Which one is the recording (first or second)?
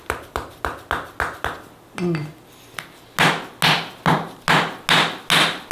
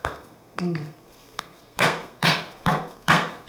first